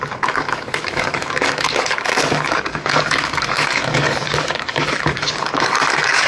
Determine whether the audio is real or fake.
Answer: fake